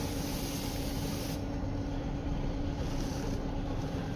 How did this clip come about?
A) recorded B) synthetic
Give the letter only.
A